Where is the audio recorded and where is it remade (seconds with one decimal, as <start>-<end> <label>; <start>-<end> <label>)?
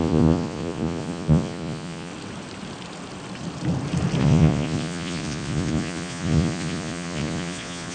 0.0-2.1 remade; 2.1-4.2 recorded; 4.2-7.9 remade